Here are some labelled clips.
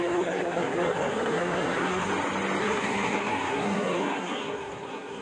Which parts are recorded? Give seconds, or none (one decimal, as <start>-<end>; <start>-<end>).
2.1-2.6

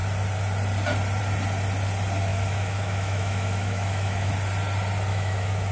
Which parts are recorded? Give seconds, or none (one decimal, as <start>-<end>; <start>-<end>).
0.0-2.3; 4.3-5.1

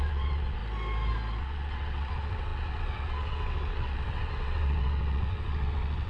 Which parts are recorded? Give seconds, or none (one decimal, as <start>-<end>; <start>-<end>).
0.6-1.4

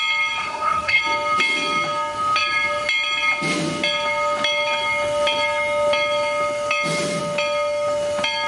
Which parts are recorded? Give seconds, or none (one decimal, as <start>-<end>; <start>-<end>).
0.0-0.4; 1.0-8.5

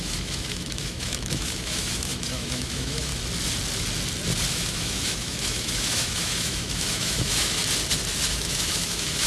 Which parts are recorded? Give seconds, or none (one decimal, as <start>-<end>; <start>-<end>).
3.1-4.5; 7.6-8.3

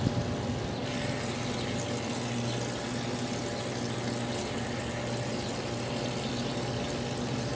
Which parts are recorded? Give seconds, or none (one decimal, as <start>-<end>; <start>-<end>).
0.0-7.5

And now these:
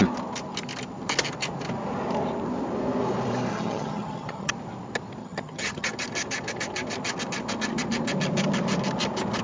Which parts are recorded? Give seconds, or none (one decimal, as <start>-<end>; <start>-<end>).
0.0-3.5; 4.5-5.2; 5.9-9.4